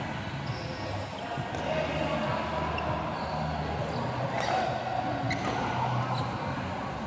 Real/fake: real